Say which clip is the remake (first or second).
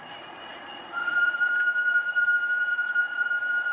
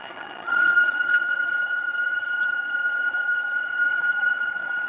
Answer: second